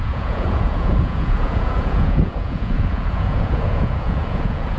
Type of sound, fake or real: fake